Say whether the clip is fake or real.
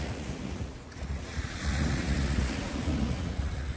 fake